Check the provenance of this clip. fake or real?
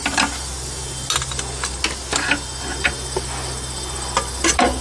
real